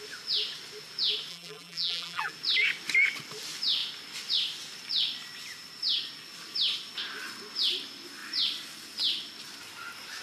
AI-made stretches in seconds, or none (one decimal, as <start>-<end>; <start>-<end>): 1.3-2.3